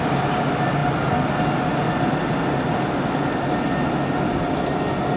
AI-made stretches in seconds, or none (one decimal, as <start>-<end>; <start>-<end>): none